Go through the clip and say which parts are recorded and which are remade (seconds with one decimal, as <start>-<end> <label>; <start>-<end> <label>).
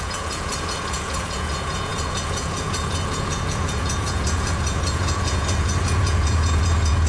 0.0-7.1 remade